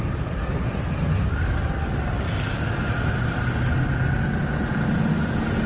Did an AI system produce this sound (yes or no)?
no